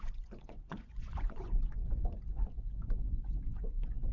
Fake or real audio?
fake